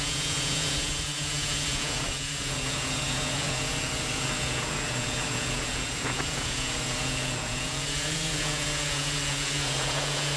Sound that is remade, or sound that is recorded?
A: remade